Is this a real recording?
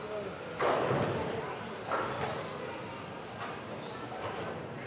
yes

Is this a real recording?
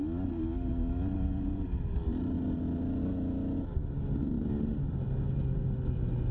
yes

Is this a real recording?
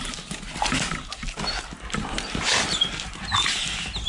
yes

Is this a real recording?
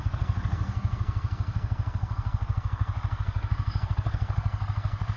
no